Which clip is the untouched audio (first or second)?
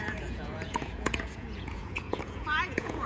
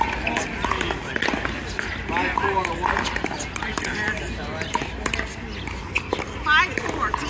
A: second